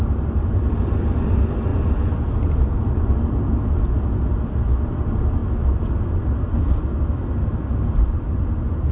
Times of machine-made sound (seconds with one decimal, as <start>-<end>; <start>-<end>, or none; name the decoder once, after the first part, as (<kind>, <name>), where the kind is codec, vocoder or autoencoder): none